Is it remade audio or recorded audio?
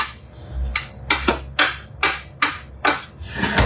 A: recorded